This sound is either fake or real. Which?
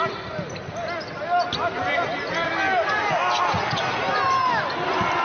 real